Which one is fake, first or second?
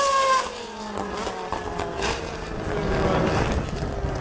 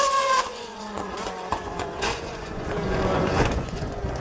second